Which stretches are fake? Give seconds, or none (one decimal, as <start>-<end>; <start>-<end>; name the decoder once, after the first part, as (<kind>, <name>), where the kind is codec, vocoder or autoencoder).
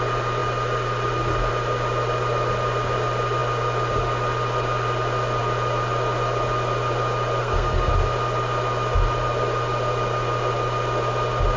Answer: 7.4-7.9 (codec, SNAC)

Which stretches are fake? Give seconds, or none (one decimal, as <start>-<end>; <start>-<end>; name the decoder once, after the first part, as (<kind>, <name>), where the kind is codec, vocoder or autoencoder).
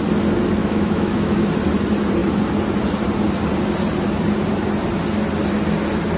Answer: 0.6-1.5 (autoencoder, DAC-VAE)